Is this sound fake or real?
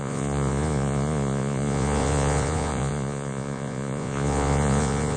fake